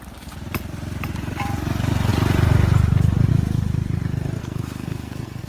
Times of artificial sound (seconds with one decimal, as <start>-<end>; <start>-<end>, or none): 4.4-5.5